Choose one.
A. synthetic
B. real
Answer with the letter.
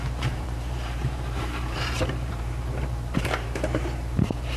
A